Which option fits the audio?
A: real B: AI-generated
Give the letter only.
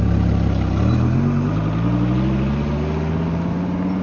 A